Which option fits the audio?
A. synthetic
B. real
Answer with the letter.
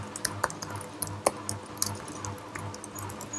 B